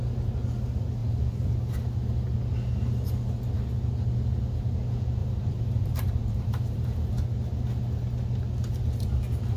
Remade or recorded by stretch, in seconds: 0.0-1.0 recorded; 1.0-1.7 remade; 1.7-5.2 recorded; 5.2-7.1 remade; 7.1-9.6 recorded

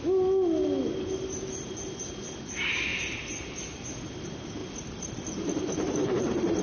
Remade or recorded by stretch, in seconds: 0.0-2.9 recorded; 2.9-3.4 remade; 3.4-4.6 recorded; 4.6-6.6 remade

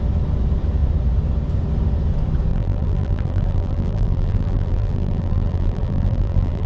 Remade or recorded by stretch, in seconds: 0.0-2.5 recorded; 2.5-6.7 remade

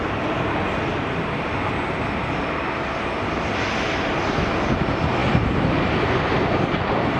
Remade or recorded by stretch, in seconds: 0.0-7.2 recorded

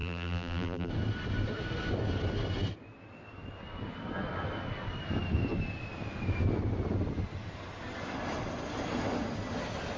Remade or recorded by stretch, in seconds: 0.0-0.9 remade; 0.9-10.0 recorded

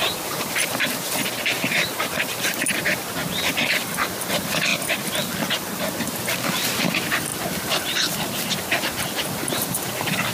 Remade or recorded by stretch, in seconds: 0.0-4.7 remade; 4.7-6.5 recorded; 6.5-7.3 remade; 7.3-8.5 recorded; 8.5-10.3 remade